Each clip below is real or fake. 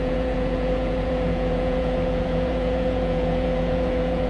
fake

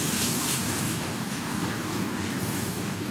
fake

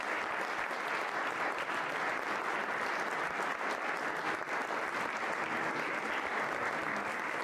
real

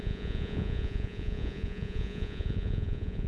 fake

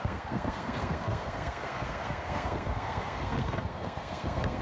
fake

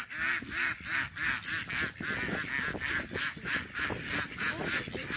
real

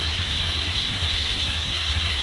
fake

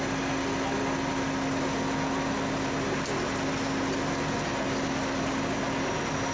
real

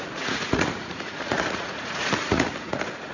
fake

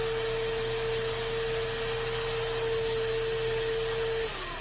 real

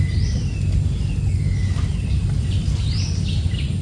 real